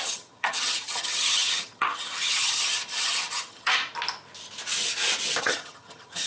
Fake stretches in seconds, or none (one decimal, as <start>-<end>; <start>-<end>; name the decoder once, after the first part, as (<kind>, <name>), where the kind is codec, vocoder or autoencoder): 0.0-3.8 (vocoder, HiFi-GAN); 5.4-6.3